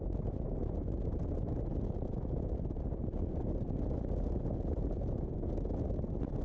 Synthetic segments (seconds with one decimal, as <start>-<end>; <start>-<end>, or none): none